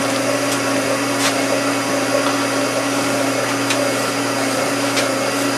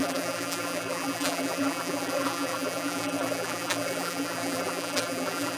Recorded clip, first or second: first